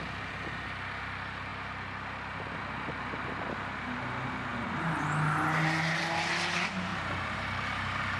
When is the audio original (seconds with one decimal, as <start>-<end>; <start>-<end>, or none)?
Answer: 0.0-6.9

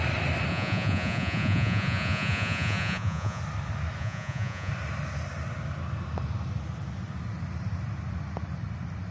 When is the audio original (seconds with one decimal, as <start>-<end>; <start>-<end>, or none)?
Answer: 0.0-0.5; 3.4-4.0; 4.7-9.1